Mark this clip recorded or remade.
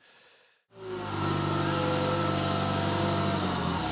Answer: recorded